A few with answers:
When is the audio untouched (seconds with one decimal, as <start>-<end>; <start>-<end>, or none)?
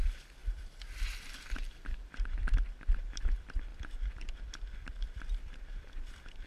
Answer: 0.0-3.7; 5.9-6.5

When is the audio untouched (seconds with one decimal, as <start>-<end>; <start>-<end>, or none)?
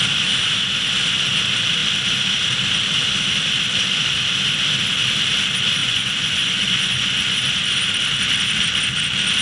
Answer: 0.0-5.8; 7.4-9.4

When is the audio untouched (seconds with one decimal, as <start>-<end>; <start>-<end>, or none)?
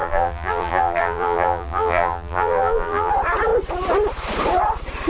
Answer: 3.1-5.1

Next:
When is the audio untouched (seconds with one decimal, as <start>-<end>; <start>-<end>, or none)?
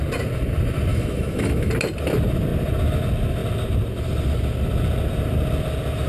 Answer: 0.0-0.9; 1.7-6.1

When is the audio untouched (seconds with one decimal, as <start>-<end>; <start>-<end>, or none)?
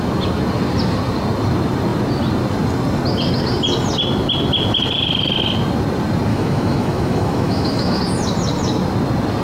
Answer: 0.0-6.3; 8.0-9.4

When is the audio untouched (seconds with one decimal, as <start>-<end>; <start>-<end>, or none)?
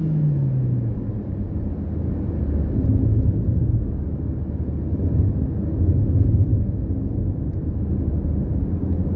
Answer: 0.0-9.2